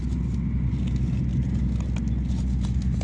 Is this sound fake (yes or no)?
no